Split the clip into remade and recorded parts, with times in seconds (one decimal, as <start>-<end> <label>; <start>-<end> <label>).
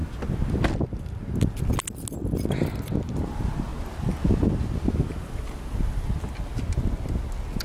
0.0-7.6 recorded